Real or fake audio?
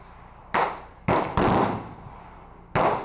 real